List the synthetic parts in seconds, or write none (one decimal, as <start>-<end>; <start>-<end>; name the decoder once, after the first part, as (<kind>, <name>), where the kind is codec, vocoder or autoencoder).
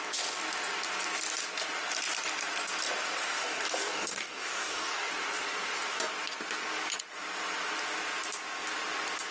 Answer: 3.2-5.1 (codec, DAC)